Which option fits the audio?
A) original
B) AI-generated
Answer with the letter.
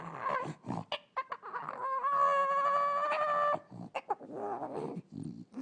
A